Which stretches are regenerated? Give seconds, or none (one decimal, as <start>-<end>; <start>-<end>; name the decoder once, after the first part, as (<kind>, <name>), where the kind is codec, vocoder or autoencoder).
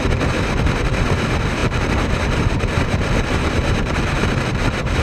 1.6-4.3 (vocoder, BigVGAN v2)